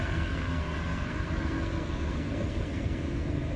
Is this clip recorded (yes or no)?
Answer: no